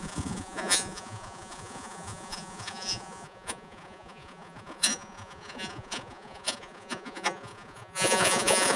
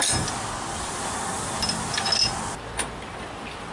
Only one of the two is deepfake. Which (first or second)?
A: first